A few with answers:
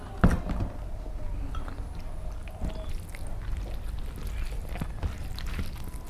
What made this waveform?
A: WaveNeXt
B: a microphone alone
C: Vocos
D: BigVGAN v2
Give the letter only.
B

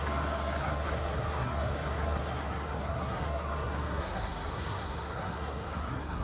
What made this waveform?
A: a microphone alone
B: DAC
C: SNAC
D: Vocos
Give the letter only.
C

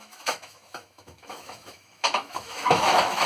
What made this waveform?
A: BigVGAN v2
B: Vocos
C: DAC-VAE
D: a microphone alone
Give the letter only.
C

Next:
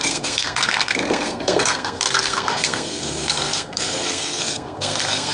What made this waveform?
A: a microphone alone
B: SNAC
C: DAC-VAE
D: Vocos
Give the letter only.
B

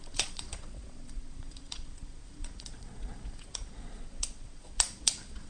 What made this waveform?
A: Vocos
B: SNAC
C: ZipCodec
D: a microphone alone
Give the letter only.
A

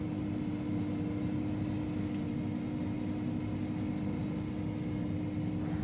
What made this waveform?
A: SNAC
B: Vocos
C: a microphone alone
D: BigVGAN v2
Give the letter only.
C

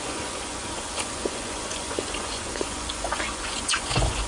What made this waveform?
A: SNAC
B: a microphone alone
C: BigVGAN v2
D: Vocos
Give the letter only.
D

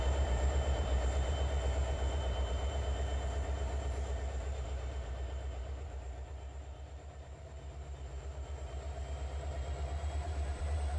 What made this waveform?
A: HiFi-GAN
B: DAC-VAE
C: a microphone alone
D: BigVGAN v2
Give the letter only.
D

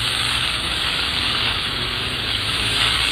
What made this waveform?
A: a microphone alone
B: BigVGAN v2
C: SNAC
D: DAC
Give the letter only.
D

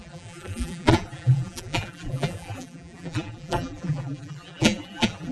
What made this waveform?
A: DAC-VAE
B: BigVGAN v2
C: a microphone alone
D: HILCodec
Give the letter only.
B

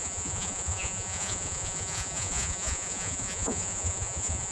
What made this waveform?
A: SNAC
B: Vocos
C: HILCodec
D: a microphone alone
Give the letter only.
B